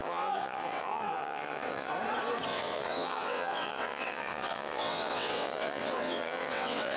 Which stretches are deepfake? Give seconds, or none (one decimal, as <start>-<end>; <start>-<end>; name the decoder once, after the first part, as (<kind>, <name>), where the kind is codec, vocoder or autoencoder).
0.0-1.9 (vocoder, WaveNeXt); 2.5-7.0